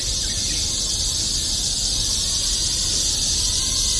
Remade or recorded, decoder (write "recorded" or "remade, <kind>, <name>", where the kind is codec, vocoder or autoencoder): recorded